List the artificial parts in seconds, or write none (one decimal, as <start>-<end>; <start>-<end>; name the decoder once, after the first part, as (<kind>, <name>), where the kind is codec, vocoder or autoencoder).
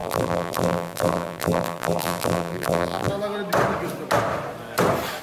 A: 0.0-3.1 (vocoder, BigVGAN v2)